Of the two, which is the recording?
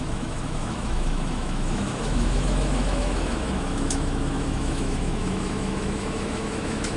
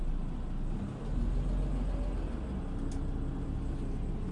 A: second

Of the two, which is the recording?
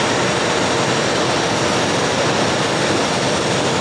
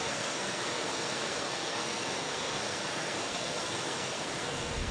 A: first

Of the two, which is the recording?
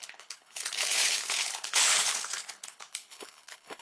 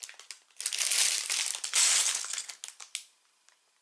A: second